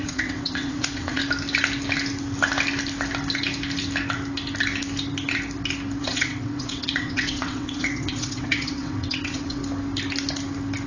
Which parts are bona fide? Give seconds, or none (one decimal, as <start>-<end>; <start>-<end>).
1.2-6.0; 9.6-10.9